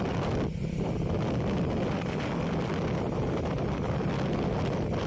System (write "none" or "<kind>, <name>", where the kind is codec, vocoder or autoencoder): none